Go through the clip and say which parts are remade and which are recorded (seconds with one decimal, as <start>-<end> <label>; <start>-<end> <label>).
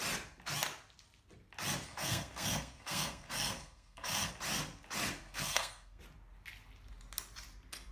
0.0-1.9 recorded; 1.9-4.3 remade; 4.3-5.2 recorded; 5.2-6.0 remade; 6.0-7.9 recorded